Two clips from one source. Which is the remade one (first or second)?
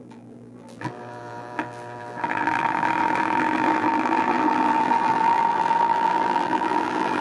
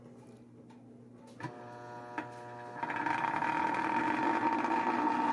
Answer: first